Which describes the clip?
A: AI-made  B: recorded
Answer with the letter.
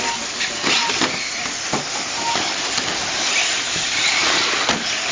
B